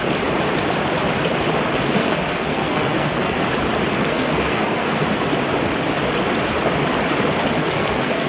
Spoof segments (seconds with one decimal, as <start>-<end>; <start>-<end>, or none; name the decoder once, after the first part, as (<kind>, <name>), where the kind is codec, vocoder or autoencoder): 2.0-3.4 (codec, SNAC); 4.0-5.2; 7.6-8.3